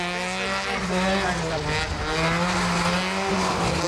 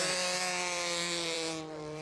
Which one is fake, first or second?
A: second